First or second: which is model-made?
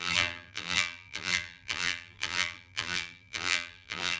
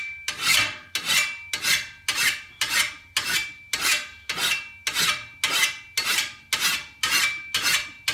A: first